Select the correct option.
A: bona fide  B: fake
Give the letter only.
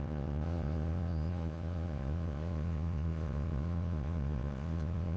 B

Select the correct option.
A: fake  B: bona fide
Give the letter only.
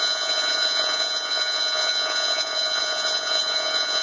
A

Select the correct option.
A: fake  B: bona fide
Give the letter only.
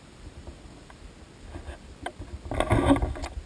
B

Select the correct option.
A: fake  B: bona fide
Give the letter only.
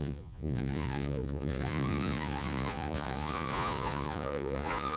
A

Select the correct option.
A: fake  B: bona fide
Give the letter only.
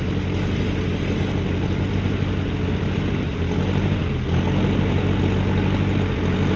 B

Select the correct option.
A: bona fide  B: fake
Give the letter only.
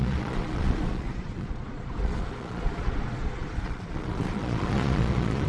B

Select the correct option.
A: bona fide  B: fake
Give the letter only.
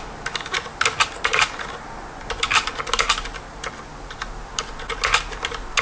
A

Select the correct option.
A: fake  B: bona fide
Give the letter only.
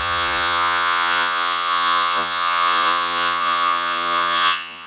A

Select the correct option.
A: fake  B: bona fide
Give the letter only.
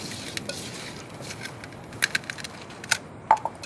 B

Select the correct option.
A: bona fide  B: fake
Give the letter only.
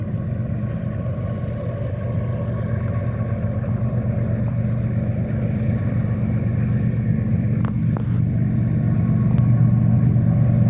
A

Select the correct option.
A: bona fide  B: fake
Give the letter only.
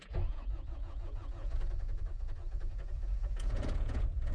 B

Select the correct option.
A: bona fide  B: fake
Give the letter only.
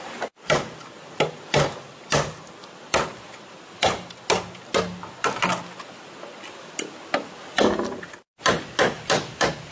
A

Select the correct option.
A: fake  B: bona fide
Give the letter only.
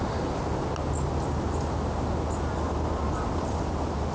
B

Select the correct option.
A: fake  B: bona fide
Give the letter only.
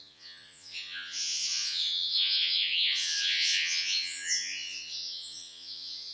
A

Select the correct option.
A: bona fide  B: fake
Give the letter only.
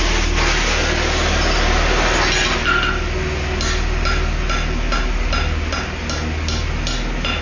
A